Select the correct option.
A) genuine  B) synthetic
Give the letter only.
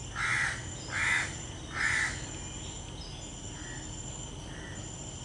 A